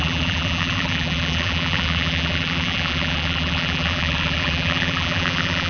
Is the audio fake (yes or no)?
yes